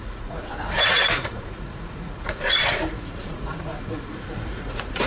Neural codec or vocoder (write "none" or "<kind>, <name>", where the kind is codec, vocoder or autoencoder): vocoder, Vocos